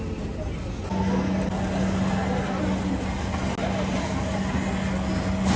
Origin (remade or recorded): recorded